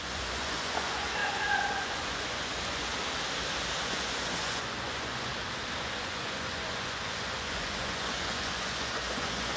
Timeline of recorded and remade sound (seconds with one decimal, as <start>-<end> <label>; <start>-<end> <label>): 0.0-2.9 remade; 2.9-3.8 recorded; 3.8-5.3 remade; 5.3-5.8 recorded; 5.8-9.6 remade